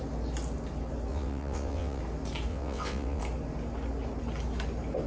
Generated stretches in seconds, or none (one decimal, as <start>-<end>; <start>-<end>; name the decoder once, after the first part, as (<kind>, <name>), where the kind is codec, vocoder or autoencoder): 1.1-2.0 (vocoder, WaveNeXt); 2.5-3.2